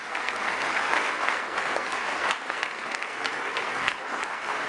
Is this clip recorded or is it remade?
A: remade